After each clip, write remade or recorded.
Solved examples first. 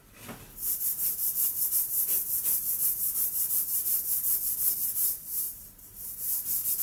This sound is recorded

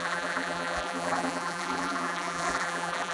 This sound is remade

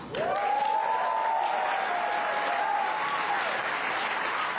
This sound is recorded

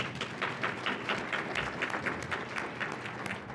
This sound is recorded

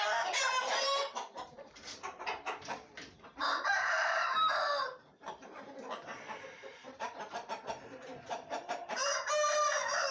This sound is remade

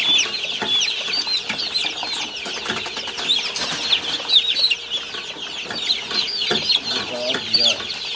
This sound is recorded